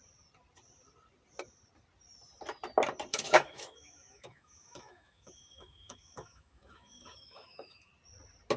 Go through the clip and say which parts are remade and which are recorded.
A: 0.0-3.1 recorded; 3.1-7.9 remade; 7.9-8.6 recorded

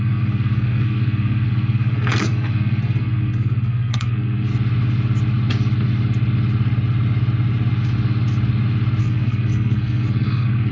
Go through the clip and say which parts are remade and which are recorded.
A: 0.0-4.5 remade; 4.5-9.0 recorded; 9.0-10.7 remade

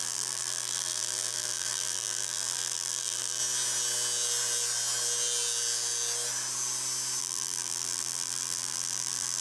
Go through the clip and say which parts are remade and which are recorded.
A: 0.0-3.4 remade; 3.4-7.2 recorded; 7.2-9.4 remade

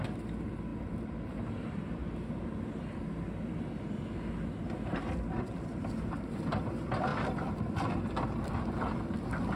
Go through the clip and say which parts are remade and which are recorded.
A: 0.0-0.7 recorded; 0.7-1.4 remade; 1.4-7.1 recorded; 7.1-9.6 remade

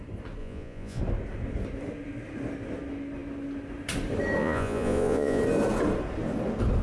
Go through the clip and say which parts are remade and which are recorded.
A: 0.0-0.4 recorded; 0.4-1.0 remade; 1.0-4.4 recorded; 4.4-5.4 remade; 5.4-6.8 recorded